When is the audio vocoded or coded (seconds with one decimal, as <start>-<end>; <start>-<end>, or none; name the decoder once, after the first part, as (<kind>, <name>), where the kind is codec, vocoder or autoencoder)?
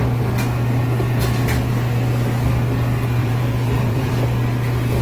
3.2-4.1 (vocoder, Vocos)